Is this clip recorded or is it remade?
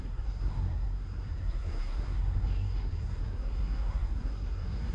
remade